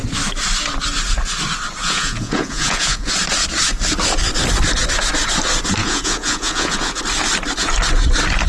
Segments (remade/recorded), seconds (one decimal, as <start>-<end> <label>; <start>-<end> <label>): 0.0-1.8 recorded; 1.8-3.1 remade; 3.1-5.8 recorded; 5.8-7.0 remade; 7.0-8.5 recorded